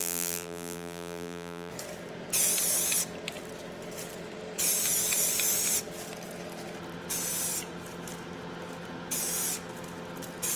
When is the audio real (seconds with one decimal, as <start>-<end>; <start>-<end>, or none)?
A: 1.7-10.6